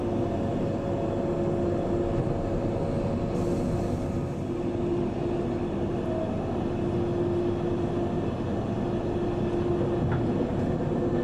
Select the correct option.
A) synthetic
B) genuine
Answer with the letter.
B